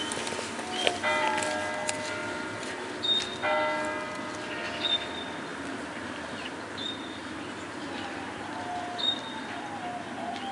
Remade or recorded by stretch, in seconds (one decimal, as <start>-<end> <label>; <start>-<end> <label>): 0.0-2.2 recorded; 2.2-3.1 remade; 3.1-5.5 recorded; 5.5-6.6 remade; 6.6-7.2 recorded; 7.2-7.8 remade; 7.8-10.5 recorded